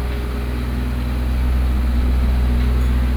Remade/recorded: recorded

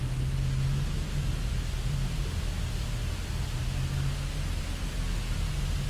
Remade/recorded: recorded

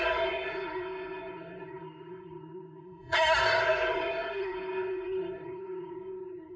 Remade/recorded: remade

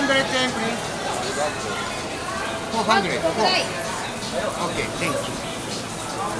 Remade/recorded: recorded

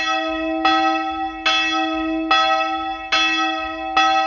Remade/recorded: recorded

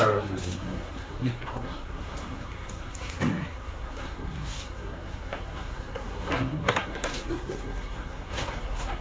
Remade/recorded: remade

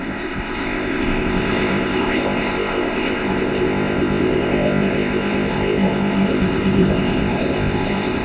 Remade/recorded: remade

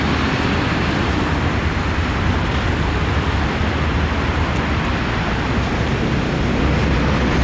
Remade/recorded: recorded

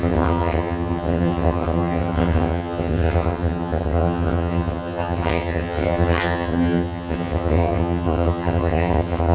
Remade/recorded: remade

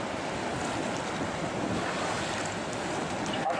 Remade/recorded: recorded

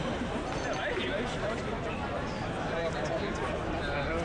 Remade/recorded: recorded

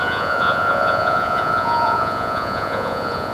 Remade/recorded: remade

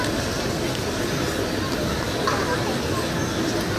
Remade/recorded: recorded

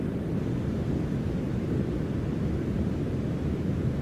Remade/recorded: remade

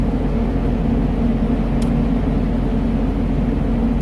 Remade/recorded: recorded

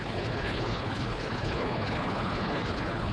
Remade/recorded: remade